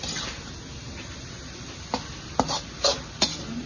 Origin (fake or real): real